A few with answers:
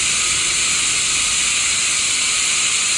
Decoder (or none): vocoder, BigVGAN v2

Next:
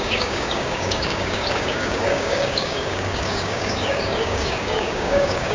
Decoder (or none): codec, DAC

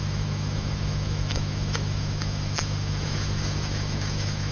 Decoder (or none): autoencoder, DAC-VAE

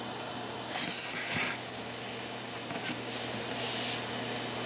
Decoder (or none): none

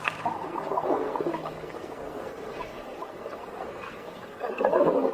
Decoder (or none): codec, SNAC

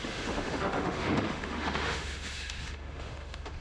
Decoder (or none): autoencoder, DAC-VAE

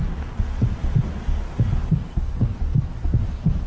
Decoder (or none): none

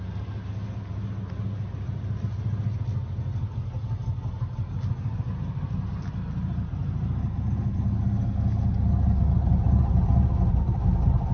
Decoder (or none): none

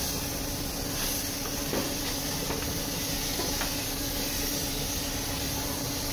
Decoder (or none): none